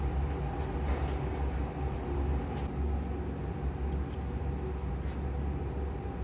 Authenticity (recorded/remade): recorded